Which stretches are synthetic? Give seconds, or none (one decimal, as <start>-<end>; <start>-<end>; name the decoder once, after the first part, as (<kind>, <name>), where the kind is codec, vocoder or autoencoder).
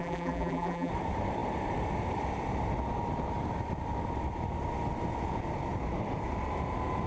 0.0-0.9 (vocoder, BigVGAN v2)